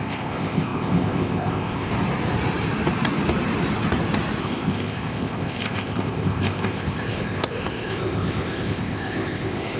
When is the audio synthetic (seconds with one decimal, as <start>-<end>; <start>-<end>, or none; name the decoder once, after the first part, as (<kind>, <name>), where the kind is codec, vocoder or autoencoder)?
0.0-1.9 (codec, ZipCodec); 4.4-9.8